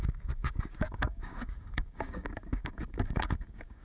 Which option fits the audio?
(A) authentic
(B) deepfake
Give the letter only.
B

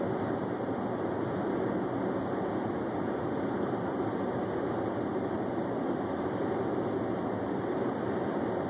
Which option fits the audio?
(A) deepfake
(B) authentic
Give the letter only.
B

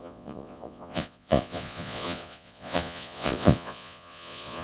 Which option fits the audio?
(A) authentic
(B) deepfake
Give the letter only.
B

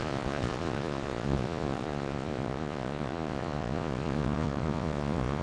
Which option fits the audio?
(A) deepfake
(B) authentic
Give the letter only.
A